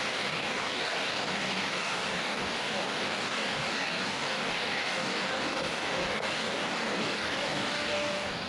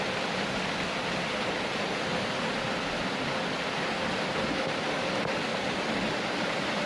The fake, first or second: first